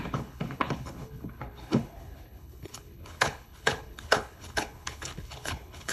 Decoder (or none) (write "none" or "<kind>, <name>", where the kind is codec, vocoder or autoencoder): codec, HILCodec